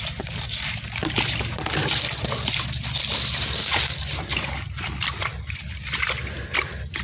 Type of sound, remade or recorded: recorded